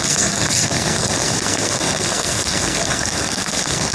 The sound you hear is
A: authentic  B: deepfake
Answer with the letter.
B